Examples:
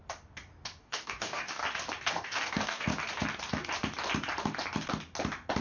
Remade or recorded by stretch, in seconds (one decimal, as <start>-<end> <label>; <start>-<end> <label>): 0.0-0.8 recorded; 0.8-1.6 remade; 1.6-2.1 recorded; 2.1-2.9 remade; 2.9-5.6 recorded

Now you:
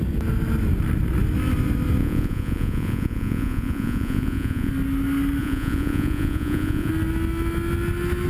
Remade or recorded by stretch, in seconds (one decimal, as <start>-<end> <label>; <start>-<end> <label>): 0.0-2.0 recorded; 2.0-4.7 remade; 4.7-5.4 recorded; 5.4-6.9 remade; 6.9-8.3 recorded

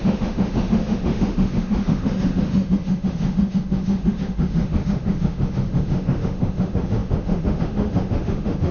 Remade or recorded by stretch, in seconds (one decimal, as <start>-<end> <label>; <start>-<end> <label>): 0.0-8.7 remade